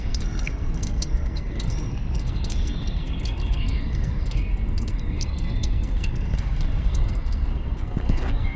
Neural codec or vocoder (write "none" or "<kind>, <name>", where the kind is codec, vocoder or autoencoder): codec, SNAC